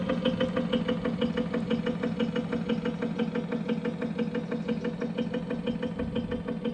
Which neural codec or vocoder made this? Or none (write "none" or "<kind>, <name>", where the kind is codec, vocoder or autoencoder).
none